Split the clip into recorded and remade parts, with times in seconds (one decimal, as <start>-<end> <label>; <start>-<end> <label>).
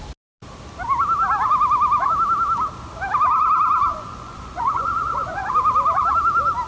0.0-3.9 recorded; 3.9-5.5 remade; 5.5-6.7 recorded